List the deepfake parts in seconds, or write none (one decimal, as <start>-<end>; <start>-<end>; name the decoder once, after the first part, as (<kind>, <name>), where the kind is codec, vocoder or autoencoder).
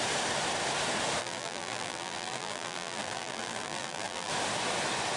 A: 1.2-4.3 (vocoder, BigVGAN v2)